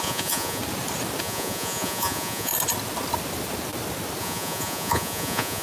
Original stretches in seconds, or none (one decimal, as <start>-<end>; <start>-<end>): 0.6-1.2; 2.5-4.2